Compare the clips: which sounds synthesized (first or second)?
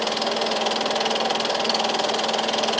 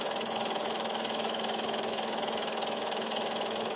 second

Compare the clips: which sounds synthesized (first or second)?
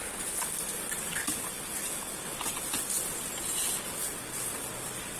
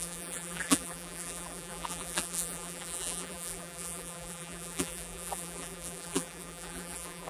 second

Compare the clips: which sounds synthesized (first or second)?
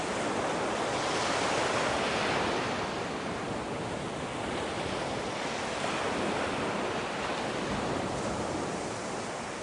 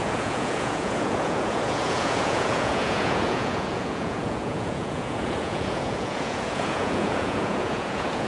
second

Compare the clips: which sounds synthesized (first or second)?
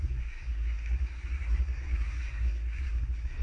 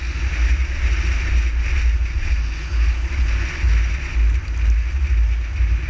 first